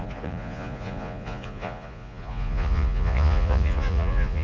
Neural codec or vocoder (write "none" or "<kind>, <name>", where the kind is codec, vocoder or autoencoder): vocoder, Vocos